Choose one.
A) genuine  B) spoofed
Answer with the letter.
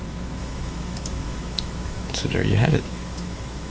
B